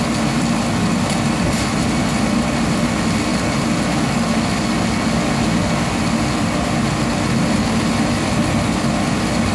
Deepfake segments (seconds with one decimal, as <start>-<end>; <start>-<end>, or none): none